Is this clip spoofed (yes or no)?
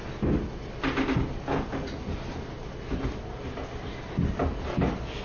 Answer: no